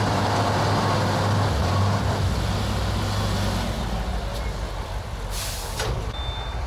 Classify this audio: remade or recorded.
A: recorded